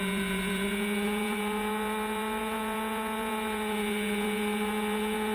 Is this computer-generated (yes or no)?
yes